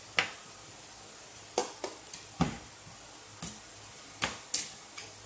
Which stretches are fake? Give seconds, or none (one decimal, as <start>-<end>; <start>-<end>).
none